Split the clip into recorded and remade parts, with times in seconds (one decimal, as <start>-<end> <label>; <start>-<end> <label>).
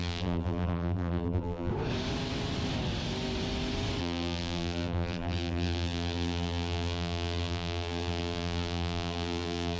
0.0-1.7 remade; 1.7-4.0 recorded; 4.0-9.8 remade